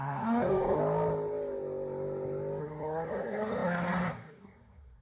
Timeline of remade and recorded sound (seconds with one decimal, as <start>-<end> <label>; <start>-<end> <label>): 0.0-0.8 remade; 0.8-2.6 recorded; 2.6-5.0 remade